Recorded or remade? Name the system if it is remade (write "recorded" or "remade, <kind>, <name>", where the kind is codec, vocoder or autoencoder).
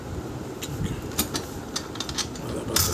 recorded